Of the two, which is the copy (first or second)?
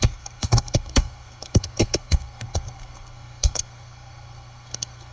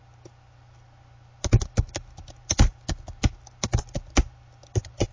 first